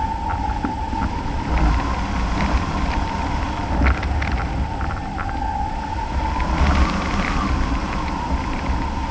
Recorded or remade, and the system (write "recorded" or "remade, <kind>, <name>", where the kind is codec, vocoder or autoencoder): recorded